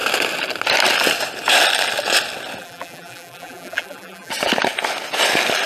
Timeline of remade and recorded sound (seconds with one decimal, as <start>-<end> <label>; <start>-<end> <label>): 0.0-2.6 recorded; 2.6-4.3 remade; 4.3-5.7 recorded